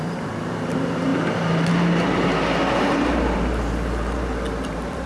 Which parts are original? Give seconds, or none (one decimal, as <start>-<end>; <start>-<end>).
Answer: 1.1-1.7; 2.3-2.8